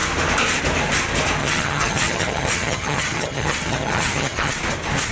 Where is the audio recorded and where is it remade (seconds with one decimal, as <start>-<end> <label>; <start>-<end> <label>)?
0.0-1.4 recorded; 1.4-4.5 remade; 4.5-5.1 recorded

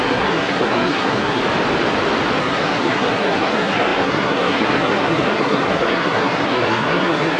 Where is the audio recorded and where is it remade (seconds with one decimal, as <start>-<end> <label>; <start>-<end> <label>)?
0.0-1.4 remade; 1.4-2.4 recorded; 2.4-7.4 remade

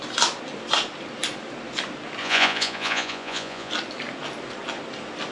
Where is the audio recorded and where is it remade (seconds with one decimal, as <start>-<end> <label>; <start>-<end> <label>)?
0.0-2.2 recorded; 2.2-3.7 remade; 3.7-5.3 recorded

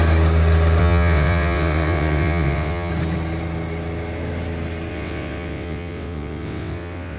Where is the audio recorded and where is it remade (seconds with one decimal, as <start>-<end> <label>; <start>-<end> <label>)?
0.0-0.8 recorded; 0.8-2.9 remade; 2.9-4.9 recorded; 4.9-7.2 remade

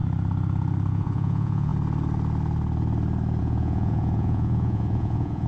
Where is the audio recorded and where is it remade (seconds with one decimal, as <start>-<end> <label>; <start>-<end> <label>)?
0.0-0.9 recorded; 0.9-1.7 remade; 1.7-3.4 recorded; 3.4-5.5 remade

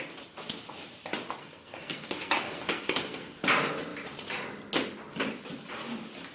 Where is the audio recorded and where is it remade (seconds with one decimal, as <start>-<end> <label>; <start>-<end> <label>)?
0.0-1.4 recorded; 1.4-3.4 remade; 3.4-6.3 recorded

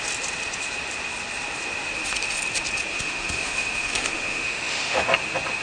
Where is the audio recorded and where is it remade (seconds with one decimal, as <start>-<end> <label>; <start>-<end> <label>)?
0.0-2.9 recorded; 2.9-5.0 remade; 5.0-5.6 recorded

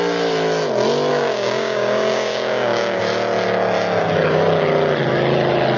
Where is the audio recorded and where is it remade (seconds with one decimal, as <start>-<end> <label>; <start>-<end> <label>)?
0.0-1.1 recorded; 1.1-3.0 remade; 3.0-5.8 recorded